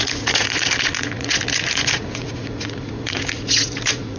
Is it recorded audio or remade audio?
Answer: remade